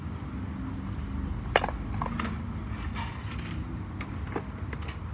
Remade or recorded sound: recorded